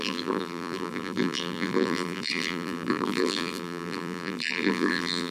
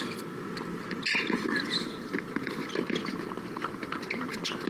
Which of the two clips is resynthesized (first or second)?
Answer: first